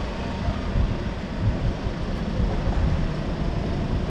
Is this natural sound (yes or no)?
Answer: yes